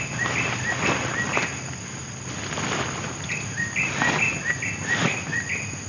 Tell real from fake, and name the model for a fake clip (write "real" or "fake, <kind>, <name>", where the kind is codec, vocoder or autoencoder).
real